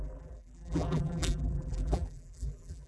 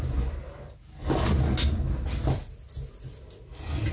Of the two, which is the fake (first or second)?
first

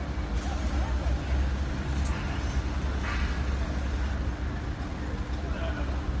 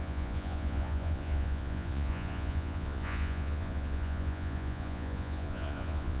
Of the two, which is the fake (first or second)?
second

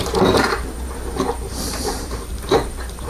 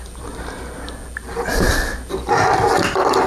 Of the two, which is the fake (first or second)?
first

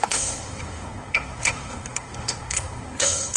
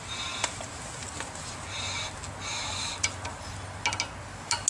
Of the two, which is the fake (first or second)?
first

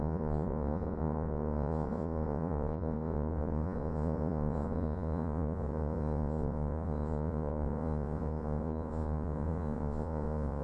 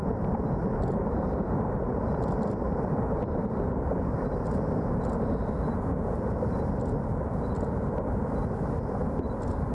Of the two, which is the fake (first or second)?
first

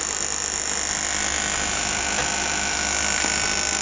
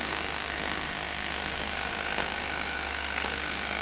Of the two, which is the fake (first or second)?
second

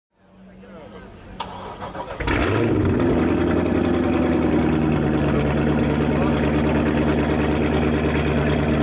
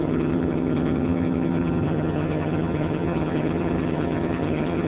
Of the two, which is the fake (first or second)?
second